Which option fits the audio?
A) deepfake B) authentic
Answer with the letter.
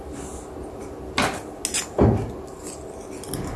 B